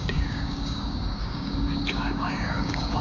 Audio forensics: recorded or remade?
remade